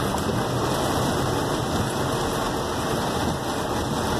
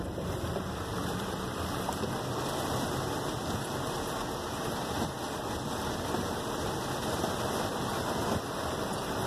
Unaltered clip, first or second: first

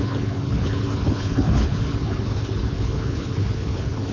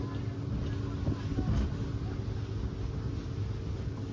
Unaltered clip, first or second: second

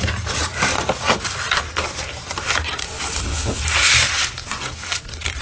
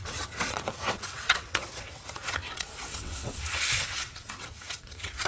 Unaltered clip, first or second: first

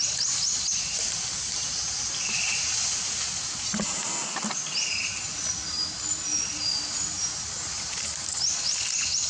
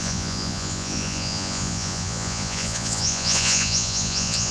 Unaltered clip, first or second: first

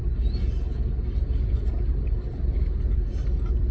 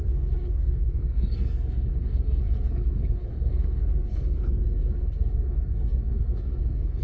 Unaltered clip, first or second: first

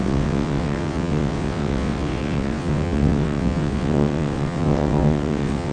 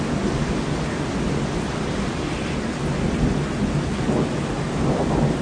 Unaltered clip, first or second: second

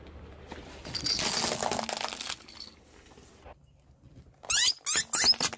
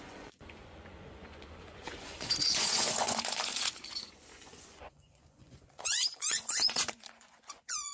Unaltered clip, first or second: first